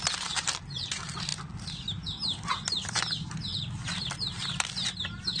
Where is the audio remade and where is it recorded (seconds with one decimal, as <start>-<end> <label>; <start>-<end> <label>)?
0.0-5.4 recorded

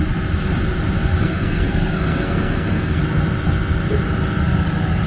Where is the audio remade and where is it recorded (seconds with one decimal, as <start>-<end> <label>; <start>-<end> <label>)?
0.0-1.2 recorded; 1.2-3.0 remade; 3.0-5.1 recorded